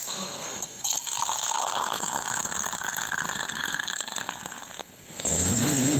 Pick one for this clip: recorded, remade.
remade